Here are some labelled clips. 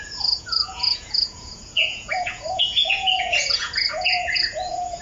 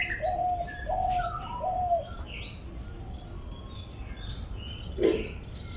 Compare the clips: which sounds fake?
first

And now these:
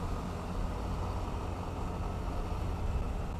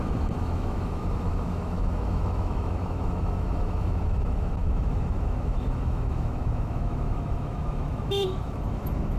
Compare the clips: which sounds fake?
second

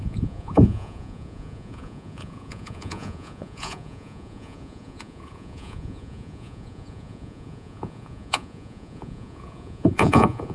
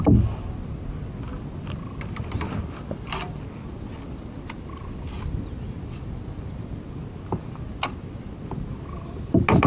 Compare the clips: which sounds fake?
first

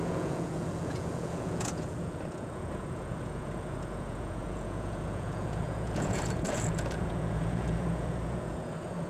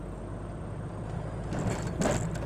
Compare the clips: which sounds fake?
first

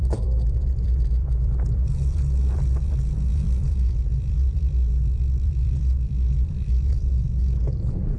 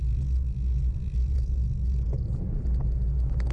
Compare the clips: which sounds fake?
first